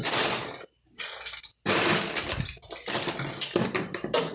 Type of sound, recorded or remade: recorded